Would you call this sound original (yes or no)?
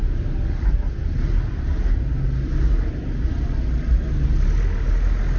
yes